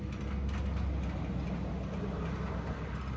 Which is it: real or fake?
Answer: real